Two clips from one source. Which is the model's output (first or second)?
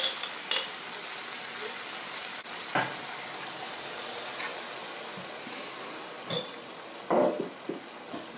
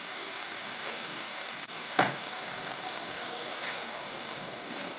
second